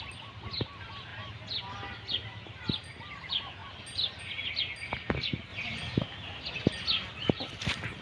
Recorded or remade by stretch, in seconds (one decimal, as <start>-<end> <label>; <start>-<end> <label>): 0.0-8.0 recorded